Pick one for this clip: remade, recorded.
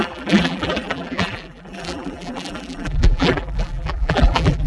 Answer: remade